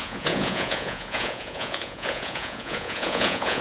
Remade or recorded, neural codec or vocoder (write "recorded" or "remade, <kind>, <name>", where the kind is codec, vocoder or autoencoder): remade, vocoder, Vocos